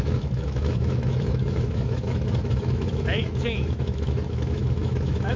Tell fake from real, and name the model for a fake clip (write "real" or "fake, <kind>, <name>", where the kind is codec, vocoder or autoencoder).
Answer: fake, autoencoder, DAC-VAE